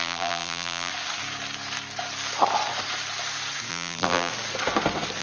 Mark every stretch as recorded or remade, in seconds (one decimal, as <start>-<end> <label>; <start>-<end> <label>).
0.0-0.9 remade; 0.9-3.7 recorded; 3.7-4.3 remade; 4.3-5.2 recorded